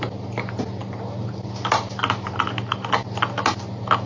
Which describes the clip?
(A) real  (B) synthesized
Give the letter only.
A